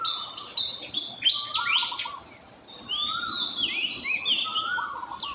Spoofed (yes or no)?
no